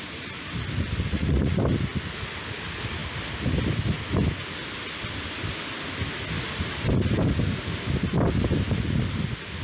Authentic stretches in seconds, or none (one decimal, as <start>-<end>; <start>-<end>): 0.0-1.1; 1.6-9.6